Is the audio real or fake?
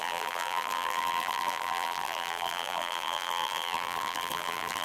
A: fake